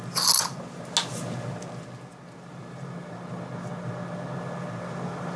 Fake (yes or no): no